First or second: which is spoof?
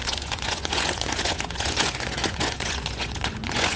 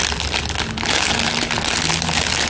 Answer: first